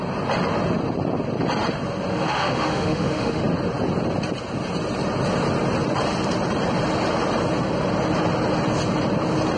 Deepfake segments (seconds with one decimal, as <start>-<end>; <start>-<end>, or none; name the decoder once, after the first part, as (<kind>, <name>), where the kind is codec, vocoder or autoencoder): 2.1-3.4 (autoencoder, DAC-VAE)